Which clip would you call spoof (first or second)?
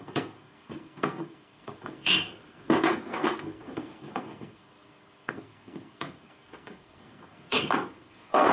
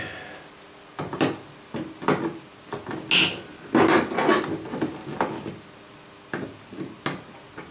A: first